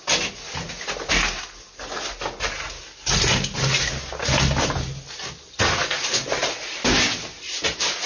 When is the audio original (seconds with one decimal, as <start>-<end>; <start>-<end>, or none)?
0.0-8.1